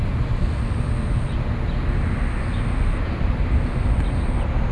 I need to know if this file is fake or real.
real